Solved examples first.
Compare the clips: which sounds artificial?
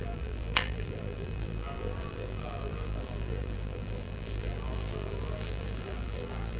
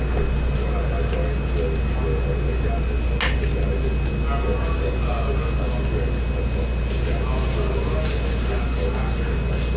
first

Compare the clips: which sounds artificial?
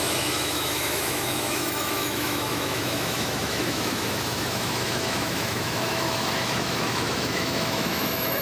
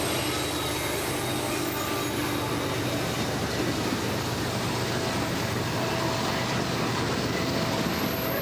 first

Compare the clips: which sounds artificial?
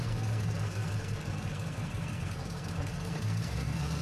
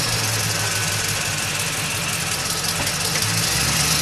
first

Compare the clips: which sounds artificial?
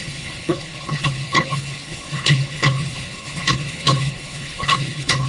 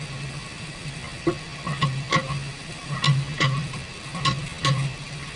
first